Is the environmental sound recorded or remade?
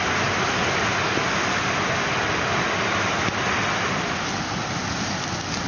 recorded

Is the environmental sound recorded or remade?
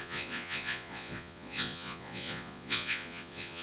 remade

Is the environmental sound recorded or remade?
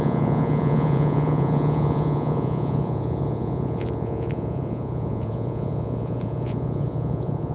remade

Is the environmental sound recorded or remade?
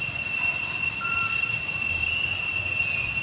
recorded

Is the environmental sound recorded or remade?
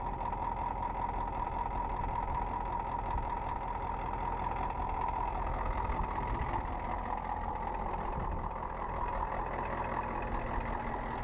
recorded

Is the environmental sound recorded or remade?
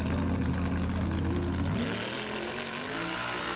recorded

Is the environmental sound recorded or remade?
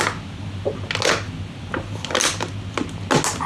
recorded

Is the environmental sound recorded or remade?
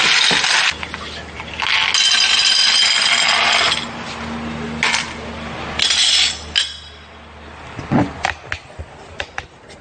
recorded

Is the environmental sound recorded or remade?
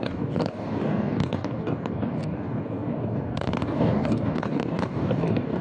remade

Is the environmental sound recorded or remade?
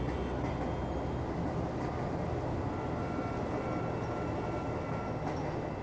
recorded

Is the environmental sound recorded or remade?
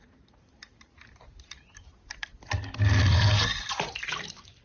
recorded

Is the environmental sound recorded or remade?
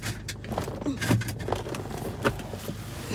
recorded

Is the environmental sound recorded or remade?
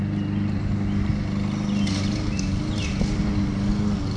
recorded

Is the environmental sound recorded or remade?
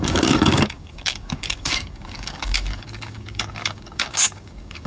remade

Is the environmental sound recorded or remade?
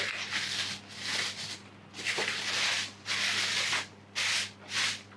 recorded